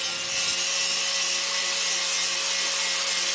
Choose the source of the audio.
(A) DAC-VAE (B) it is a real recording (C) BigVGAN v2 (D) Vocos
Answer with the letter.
B